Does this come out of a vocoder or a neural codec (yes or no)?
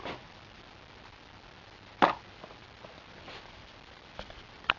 no